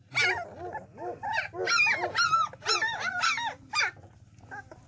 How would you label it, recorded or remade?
recorded